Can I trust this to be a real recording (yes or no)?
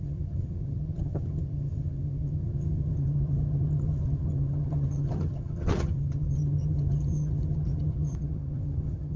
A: no